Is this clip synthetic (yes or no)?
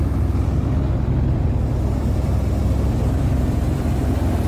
yes